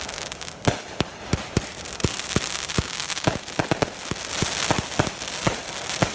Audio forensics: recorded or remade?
recorded